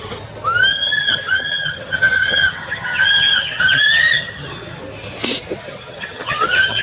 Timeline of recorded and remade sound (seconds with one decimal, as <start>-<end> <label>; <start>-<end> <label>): 0.0-0.7 recorded; 0.7-4.8 remade; 4.8-5.6 recorded; 5.6-6.8 remade